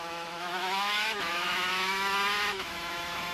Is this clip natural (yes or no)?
no